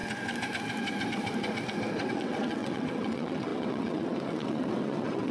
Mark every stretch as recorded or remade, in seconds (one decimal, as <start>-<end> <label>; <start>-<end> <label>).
0.0-2.1 recorded; 2.1-5.3 remade